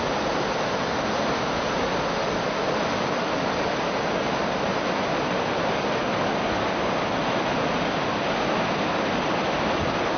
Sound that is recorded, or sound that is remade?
recorded